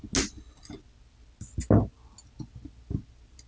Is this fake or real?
real